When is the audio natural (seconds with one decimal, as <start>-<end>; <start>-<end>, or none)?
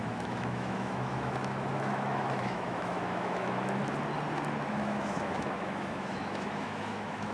3.8-4.7